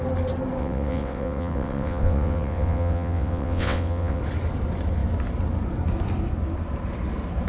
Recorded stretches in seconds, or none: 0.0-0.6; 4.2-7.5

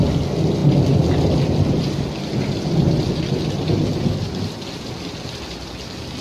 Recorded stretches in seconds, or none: 0.0-6.2